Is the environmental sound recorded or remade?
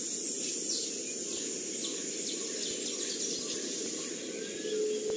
recorded